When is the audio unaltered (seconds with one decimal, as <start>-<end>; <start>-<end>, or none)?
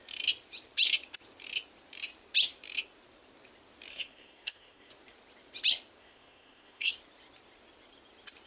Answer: 0.0-3.9; 4.9-6.0; 6.9-8.5